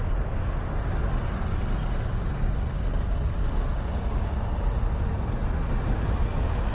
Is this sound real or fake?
real